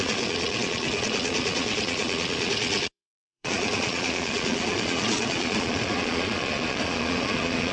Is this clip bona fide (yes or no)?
no